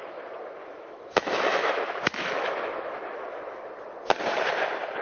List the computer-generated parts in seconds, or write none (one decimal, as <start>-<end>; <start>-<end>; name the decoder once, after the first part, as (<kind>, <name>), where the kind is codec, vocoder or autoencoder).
0.6-3.6 (autoencoder, DAC-VAE)